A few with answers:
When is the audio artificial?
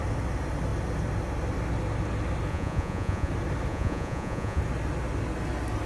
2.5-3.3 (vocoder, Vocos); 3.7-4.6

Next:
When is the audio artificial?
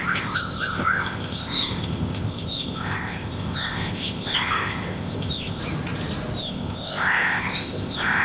0.0-5.6 (codec, ZipCodec); 6.4-8.2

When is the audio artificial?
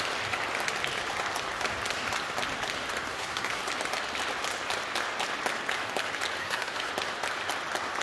3.1-3.6 (codec, SNAC); 6.4-6.9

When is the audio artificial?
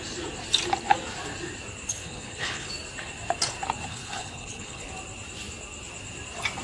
1.9-2.7 (codec, HILCodec); 3.9-4.9